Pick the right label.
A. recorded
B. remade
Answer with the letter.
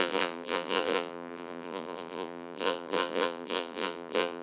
B